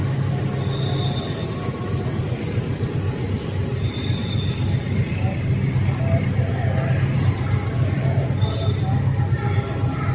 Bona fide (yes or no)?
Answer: yes